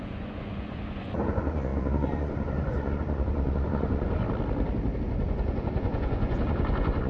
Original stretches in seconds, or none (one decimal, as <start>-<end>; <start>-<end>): 4.2-5.0